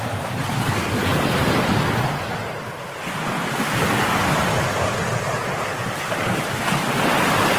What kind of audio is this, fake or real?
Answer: real